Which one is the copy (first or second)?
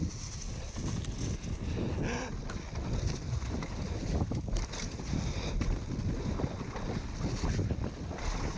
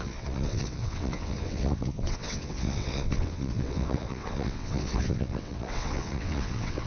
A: second